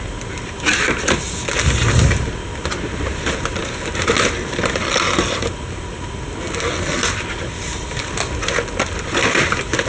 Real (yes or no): yes